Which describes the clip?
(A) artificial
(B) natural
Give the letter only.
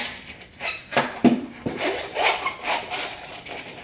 A